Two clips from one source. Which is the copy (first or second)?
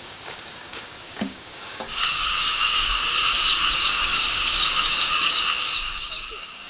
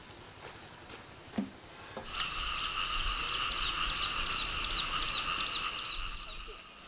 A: first